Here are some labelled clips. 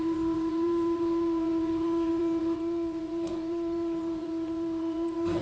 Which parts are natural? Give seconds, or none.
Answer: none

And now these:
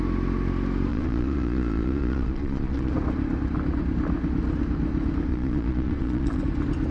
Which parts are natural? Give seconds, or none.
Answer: 0.0-0.9; 2.9-5.3; 6.4-6.9

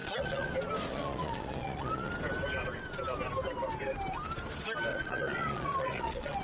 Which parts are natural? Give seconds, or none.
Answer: 0.5-0.9; 2.1-4.9

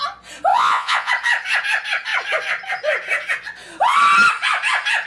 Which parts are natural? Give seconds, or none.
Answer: 0.0-0.5; 1.1-5.1

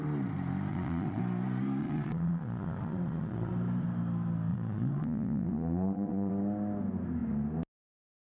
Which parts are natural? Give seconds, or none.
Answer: 0.0-0.7; 1.2-1.8; 3.5-4.5; 6.3-8.3

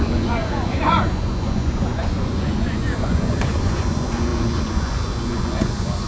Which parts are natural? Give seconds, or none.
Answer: none

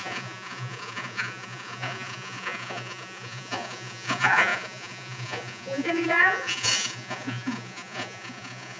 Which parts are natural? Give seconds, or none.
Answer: none

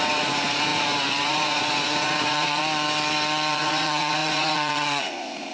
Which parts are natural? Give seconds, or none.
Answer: 2.6-3.5